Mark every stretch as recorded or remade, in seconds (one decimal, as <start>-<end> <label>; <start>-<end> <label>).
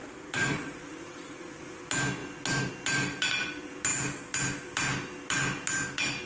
0.0-1.8 remade; 1.8-6.3 recorded